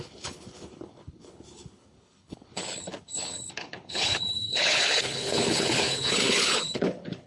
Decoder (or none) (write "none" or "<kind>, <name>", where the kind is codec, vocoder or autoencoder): codec, HILCodec